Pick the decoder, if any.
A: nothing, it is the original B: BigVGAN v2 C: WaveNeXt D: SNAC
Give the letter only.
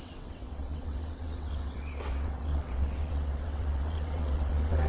C